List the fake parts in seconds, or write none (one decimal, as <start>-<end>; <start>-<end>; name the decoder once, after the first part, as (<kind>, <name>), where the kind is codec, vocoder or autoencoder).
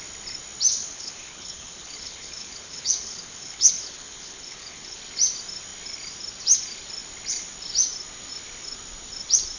0.8-5.0 (codec, HILCodec)